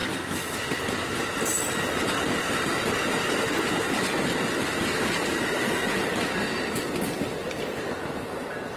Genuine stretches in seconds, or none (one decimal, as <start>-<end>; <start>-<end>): 0.0-7.4